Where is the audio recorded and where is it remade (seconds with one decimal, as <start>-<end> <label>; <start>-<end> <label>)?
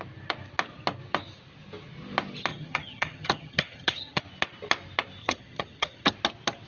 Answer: 0.0-2.5 recorded; 2.5-4.2 remade; 4.2-5.2 recorded; 5.2-6.1 remade; 6.1-6.7 recorded